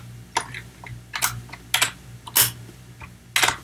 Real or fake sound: real